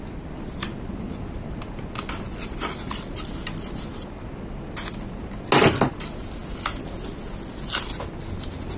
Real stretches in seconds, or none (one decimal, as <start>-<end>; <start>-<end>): 0.0-8.8